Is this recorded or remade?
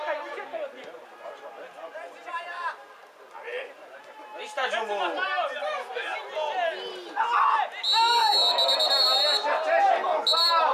recorded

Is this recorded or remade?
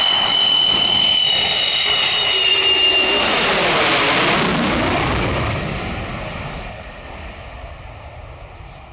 recorded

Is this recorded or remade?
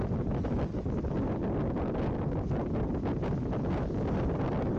recorded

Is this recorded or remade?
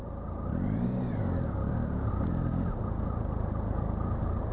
recorded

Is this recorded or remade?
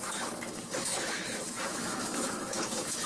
remade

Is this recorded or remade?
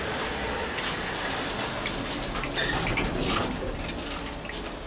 recorded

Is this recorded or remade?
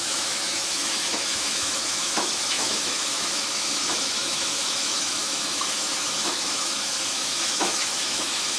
remade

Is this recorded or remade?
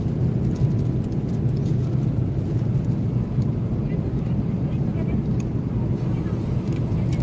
recorded